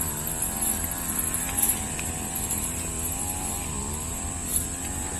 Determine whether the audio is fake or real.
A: real